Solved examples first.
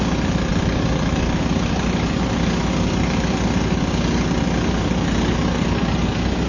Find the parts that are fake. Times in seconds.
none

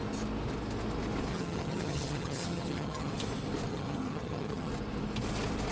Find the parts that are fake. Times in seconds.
1.3-3.1 (vocoder, HiFi-GAN); 3.7-4.7